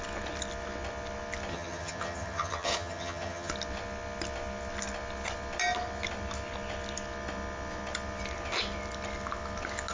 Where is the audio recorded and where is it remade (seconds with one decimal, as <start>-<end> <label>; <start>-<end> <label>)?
0.0-1.5 recorded; 1.5-3.5 remade; 3.5-9.9 recorded